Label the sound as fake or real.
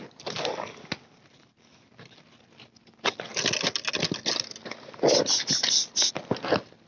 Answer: real